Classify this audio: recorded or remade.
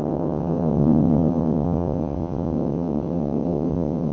remade